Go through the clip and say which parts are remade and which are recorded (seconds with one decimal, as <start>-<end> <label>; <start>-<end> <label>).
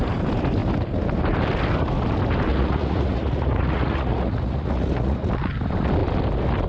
0.0-2.5 recorded; 2.5-5.3 remade; 5.3-6.7 recorded